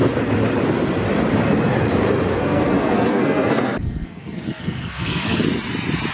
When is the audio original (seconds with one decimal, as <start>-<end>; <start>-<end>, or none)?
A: 0.0-2.3; 5.4-6.1